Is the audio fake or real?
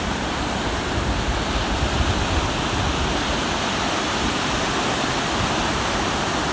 real